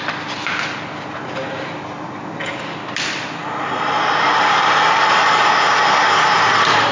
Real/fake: fake